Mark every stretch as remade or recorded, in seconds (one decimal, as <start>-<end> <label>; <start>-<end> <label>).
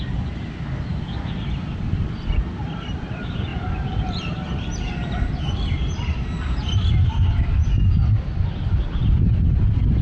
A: 0.0-0.9 recorded; 0.9-1.8 remade; 1.8-3.5 recorded; 3.5-6.9 remade; 6.9-10.0 recorded